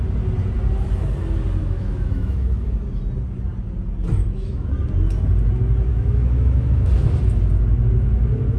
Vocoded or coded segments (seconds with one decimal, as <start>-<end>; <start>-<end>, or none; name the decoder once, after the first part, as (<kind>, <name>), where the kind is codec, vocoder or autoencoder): 1.6-2.7 (autoencoder, DAC-VAE); 4.2-4.7; 5.9-7.2